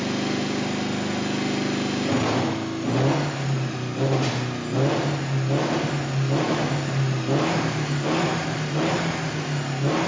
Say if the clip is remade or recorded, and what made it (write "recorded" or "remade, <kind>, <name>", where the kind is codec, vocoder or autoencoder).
recorded